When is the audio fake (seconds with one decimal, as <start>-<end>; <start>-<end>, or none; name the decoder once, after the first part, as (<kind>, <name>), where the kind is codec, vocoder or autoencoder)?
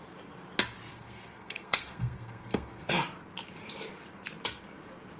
0.9-2.9 (codec, SNAC)